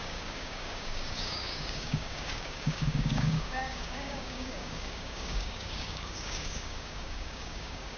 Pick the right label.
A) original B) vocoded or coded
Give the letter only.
B